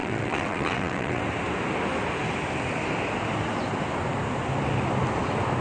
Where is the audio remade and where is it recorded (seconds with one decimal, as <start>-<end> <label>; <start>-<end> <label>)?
0.0-1.2 remade; 1.2-5.6 recorded